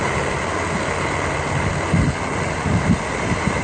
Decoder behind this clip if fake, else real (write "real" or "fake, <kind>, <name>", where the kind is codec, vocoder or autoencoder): real